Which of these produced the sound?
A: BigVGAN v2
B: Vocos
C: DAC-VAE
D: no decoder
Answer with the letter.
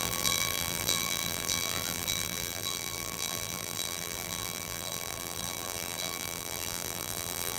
A